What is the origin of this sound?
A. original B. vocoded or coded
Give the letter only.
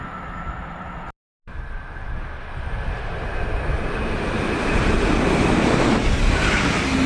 A